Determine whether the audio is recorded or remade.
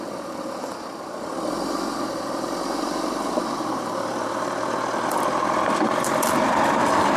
remade